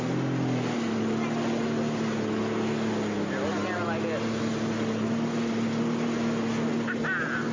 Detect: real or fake real